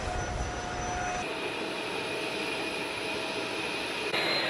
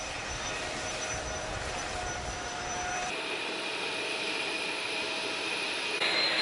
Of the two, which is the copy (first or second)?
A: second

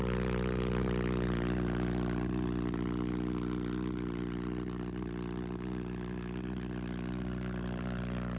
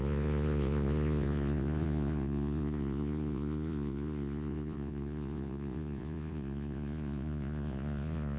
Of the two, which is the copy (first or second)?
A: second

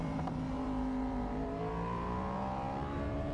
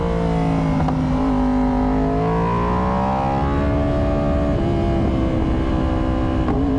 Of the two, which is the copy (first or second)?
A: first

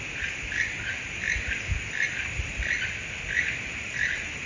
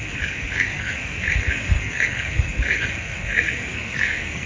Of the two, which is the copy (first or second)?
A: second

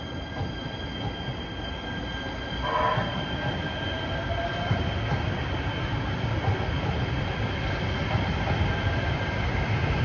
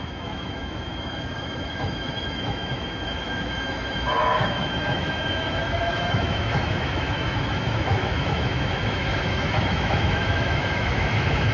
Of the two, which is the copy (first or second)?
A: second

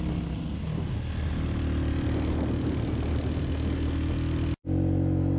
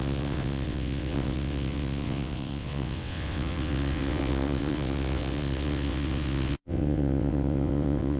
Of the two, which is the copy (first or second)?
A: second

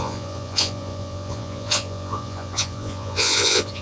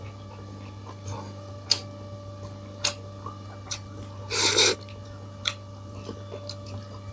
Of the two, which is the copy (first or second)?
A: first